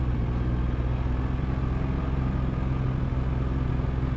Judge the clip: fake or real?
real